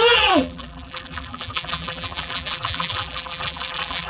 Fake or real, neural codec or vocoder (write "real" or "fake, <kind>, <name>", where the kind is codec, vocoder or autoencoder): fake, vocoder, BigVGAN v2